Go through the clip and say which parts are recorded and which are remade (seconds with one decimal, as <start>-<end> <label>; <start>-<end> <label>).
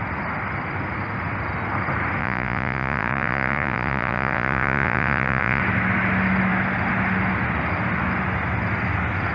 0.0-2.2 recorded; 2.2-5.6 remade; 5.6-9.3 recorded